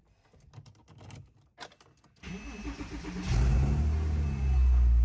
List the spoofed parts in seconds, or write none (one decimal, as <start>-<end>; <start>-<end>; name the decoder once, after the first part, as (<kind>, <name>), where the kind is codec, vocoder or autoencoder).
none